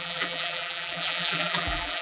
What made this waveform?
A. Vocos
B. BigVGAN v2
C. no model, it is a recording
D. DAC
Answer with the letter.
B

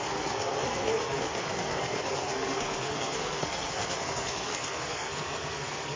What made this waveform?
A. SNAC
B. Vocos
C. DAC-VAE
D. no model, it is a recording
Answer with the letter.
A